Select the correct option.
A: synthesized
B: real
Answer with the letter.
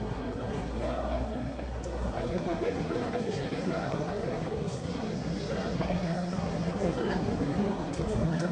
A